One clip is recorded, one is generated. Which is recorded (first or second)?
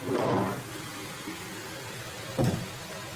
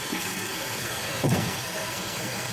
first